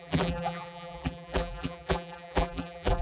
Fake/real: fake